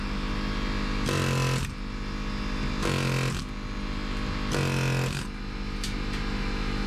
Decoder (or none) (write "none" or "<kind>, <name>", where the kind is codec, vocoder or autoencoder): none